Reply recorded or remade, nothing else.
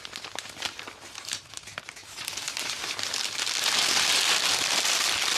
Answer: recorded